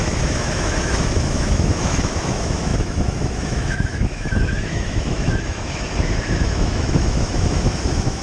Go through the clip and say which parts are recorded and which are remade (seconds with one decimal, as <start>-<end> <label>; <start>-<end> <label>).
0.0-8.2 remade